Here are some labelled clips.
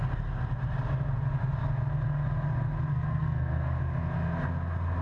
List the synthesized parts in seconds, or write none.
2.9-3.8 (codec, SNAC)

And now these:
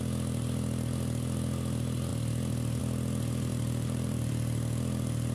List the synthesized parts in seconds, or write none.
3.5-4.3 (vocoder, BigVGAN v2)

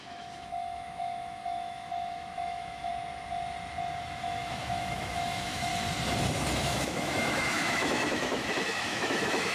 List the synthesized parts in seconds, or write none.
0.0-2.9 (autoencoder, DAC-VAE); 4.0-5.7; 6.6-9.5

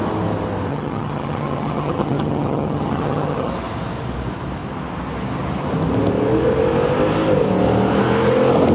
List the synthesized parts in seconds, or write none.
0.7-3.5 (vocoder, HiFi-GAN)

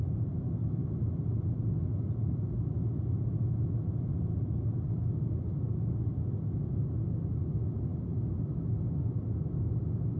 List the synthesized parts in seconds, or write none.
none

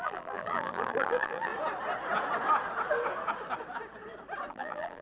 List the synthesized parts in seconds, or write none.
0.0-1.5 (vocoder, BigVGAN v2); 4.5-5.0

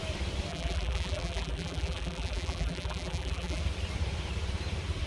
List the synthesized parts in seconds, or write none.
0.5-3.6 (vocoder, BigVGAN v2)